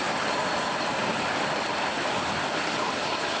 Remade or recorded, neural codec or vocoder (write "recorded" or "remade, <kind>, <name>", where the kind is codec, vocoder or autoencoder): recorded